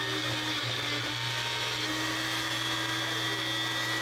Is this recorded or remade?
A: recorded